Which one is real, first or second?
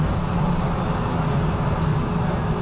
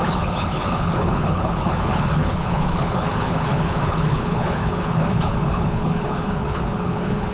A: first